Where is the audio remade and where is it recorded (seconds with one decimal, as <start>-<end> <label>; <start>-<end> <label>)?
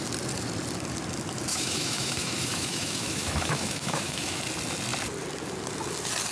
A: 0.0-1.5 recorded; 1.5-4.4 remade; 4.4-6.3 recorded